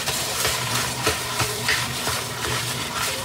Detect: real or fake fake